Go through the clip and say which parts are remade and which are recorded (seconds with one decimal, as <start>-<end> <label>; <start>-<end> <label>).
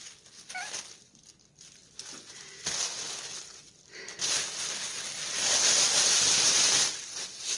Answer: 0.0-7.6 recorded